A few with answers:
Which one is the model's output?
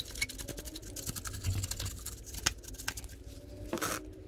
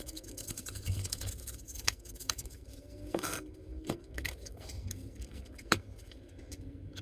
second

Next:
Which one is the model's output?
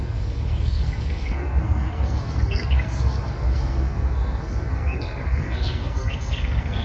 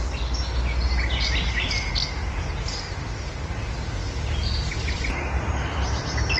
first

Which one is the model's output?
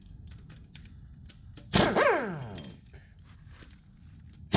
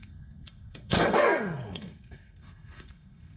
second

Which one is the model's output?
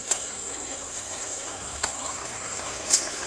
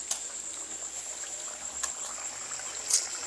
first